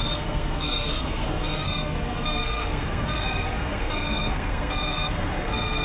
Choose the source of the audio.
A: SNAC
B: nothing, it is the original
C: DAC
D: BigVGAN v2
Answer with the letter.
A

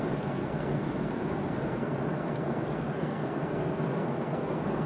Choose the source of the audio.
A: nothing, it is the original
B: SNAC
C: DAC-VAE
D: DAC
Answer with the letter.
B